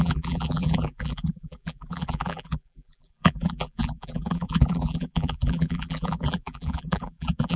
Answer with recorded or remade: remade